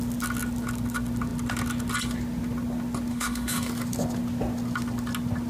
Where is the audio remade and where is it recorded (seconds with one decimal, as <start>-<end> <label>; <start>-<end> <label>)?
0.0-3.1 recorded; 3.1-3.7 remade; 3.7-5.5 recorded